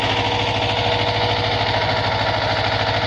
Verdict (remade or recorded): recorded